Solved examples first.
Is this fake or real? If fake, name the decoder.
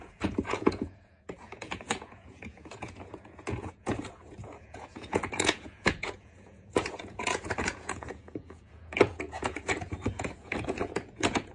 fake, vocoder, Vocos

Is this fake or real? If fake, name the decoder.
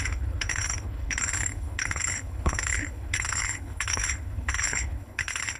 fake, codec, HILCodec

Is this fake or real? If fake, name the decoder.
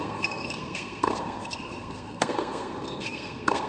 fake, codec, SNAC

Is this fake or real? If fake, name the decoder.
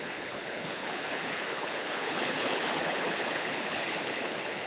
fake, codec, HILCodec